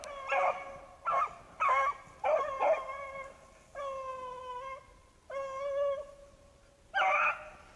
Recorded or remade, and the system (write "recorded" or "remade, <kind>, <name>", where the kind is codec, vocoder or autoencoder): recorded